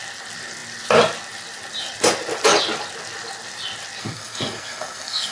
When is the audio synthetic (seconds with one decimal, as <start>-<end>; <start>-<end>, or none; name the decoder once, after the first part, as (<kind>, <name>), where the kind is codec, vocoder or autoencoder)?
4.0-5.3 (codec, SNAC)